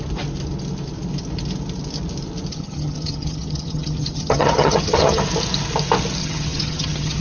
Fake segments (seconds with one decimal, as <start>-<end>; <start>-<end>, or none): 2.5-5.2; 6.2-7.2